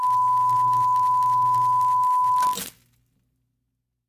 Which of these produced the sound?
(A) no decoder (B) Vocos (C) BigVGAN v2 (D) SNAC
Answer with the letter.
A